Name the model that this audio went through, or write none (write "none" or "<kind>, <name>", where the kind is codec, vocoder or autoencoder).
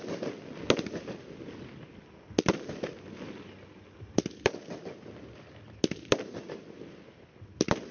none